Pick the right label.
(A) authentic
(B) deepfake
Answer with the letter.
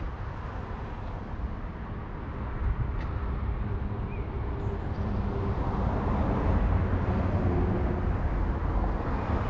A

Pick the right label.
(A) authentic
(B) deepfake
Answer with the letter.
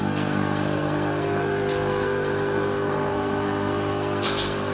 B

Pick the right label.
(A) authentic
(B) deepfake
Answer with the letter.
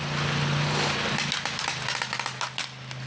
A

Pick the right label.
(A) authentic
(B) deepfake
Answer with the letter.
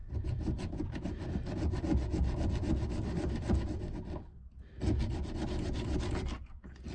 A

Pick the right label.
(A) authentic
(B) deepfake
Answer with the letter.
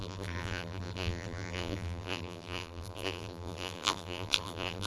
B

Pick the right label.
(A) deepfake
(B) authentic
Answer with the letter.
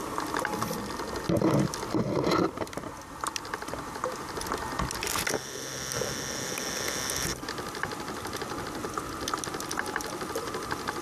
B